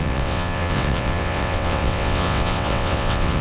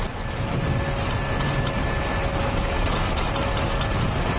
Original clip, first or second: second